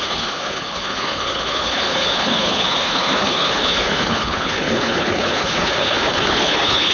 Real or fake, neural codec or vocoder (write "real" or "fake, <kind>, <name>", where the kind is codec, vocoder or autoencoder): fake, codec, HILCodec